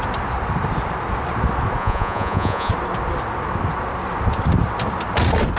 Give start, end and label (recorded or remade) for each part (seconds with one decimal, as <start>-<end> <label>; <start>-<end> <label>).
0.0-1.8 recorded; 1.8-2.7 remade; 2.7-5.6 recorded